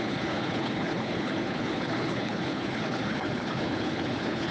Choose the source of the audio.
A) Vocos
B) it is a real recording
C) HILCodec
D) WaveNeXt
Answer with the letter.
C